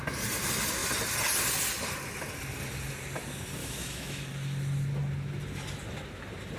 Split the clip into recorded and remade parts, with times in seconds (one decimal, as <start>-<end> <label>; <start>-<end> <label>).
0.0-3.6 recorded; 3.6-4.2 remade; 4.2-6.6 recorded